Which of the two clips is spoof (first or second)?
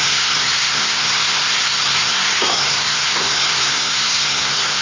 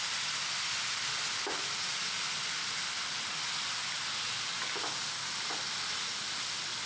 first